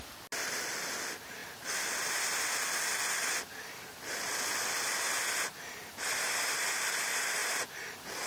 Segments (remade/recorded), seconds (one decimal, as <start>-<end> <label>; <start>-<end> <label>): 0.0-1.4 recorded; 1.4-1.9 remade; 1.9-8.3 recorded